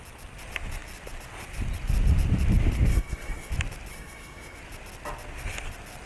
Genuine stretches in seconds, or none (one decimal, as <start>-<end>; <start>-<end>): 0.0-2.9; 3.5-3.9; 4.6-6.1